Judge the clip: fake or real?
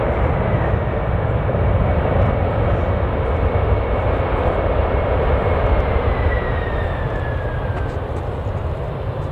real